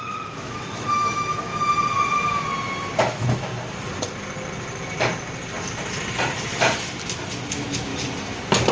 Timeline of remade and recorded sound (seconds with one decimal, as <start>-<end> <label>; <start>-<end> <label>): 0.0-1.5 remade; 1.5-3.0 recorded; 3.0-3.5 remade; 3.5-7.5 recorded; 7.5-7.9 remade; 7.9-8.7 recorded